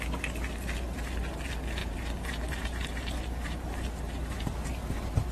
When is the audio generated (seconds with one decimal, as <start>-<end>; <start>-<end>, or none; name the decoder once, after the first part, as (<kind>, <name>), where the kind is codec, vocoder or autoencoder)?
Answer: 1.8-5.3 (vocoder, BigVGAN v2)

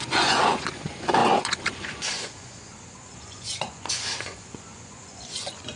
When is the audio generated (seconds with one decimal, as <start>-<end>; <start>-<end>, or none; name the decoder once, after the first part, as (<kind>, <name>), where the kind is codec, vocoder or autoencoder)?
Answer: 0.0-5.8 (vocoder, Vocos)